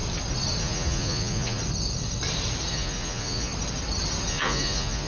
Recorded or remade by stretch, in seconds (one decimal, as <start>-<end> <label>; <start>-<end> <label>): 0.0-0.6 recorded; 0.6-1.6 remade; 1.6-2.7 recorded; 2.7-3.5 remade; 3.5-4.3 recorded; 4.3-5.1 remade